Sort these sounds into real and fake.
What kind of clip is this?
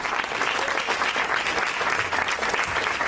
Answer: real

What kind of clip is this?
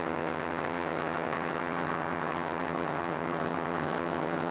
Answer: fake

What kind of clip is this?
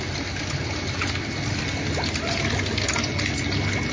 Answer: real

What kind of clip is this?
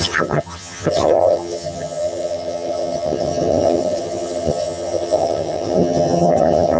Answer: fake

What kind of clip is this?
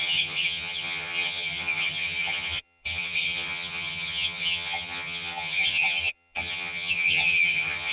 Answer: fake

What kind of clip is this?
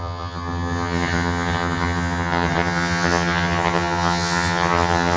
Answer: fake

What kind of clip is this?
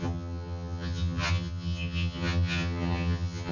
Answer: fake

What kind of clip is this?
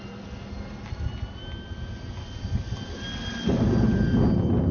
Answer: real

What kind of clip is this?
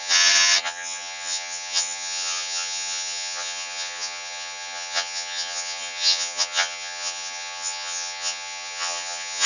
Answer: fake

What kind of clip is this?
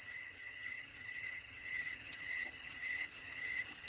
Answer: fake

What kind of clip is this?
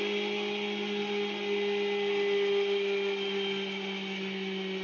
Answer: real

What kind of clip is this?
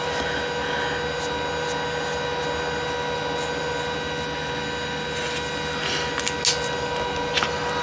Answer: real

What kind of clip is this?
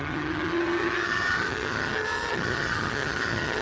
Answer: fake